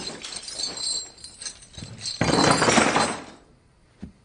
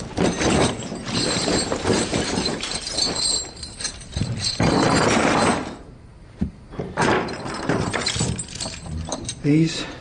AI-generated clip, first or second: second